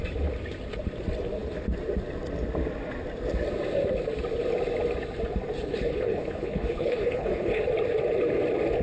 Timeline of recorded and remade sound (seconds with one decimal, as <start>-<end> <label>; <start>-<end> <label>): 0.0-5.7 recorded; 5.7-7.6 remade; 7.6-8.8 recorded